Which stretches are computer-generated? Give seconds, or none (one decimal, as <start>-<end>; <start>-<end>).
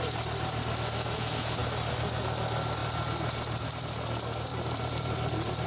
4.5-5.7